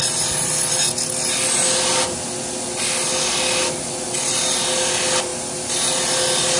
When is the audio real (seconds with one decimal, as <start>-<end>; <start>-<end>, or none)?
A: 0.0-6.6